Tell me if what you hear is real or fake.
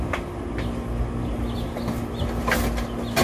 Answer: real